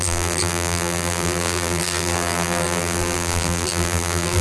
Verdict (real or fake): fake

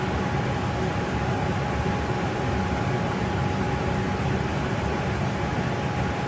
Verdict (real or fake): real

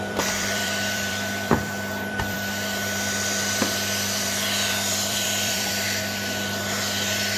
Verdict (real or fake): fake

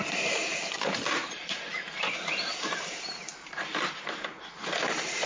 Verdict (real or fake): fake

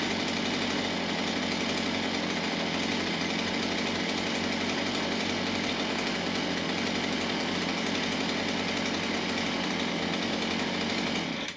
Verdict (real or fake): real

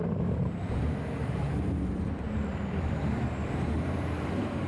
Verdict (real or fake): fake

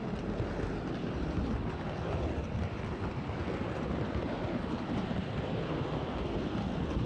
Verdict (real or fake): real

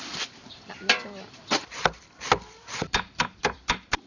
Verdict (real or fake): fake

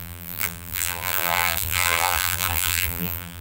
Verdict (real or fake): fake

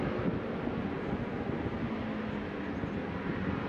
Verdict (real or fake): real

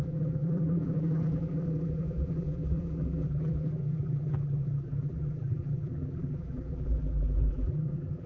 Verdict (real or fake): fake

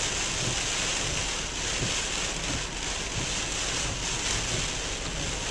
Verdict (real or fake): real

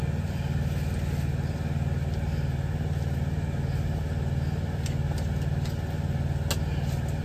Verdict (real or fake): real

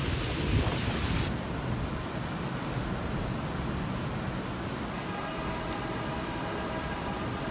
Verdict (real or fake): real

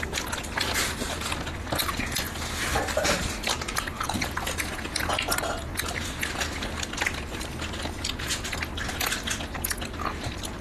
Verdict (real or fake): real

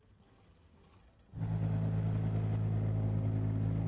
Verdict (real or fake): real